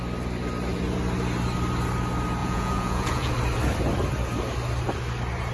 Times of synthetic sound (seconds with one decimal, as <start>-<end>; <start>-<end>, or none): 2.4-3.3